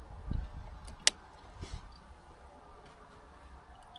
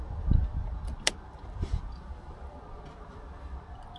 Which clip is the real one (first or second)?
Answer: first